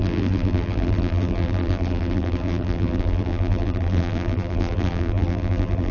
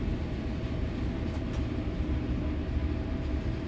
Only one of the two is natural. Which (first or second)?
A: second